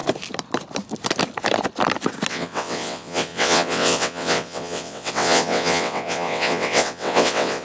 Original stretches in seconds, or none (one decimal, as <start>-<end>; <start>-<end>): 0.0-2.3